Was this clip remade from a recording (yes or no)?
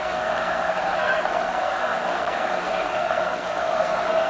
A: yes